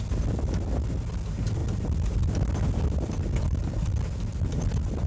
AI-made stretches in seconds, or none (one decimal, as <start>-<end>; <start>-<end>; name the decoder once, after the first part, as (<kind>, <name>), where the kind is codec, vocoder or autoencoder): none